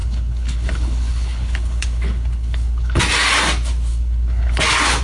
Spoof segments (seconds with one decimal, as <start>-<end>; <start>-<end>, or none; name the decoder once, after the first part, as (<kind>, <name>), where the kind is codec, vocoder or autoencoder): 0.0-3.0 (codec, HILCodec); 3.9-4.6